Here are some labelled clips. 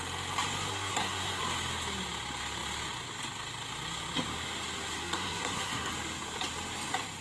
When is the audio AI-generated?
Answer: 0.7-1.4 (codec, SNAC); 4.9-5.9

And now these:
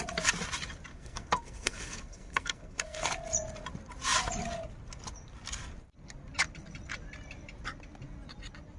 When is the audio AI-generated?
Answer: 0.9-3.1 (codec, SNAC)

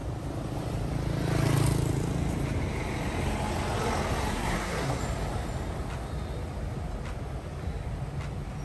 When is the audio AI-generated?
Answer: 4.3-5.0 (codec, SNAC)